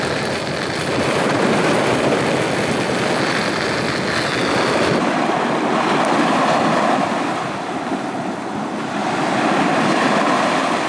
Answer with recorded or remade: recorded